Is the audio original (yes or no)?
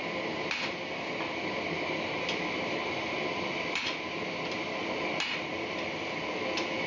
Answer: yes